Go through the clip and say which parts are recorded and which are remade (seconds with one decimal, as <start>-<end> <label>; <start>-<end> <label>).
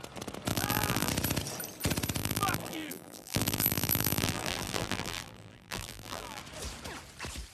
0.0-0.5 recorded; 0.5-1.1 remade; 1.1-2.2 recorded; 2.2-6.4 remade; 6.4-7.5 recorded